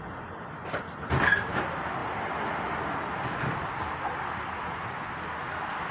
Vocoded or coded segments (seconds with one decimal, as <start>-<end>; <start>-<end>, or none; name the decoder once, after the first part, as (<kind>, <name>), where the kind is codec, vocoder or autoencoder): none